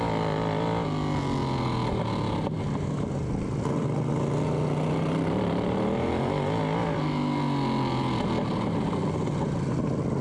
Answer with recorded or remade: recorded